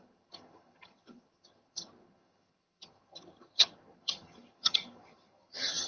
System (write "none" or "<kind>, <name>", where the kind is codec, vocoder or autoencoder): vocoder, HiFi-GAN